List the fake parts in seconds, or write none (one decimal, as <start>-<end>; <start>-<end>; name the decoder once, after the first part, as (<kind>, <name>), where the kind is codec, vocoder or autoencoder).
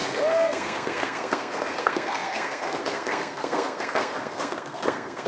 0.0-5.3 (codec, SNAC)